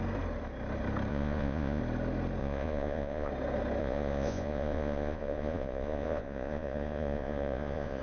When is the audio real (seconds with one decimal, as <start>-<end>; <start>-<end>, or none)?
0.0-1.1; 1.8-2.4; 3.3-3.8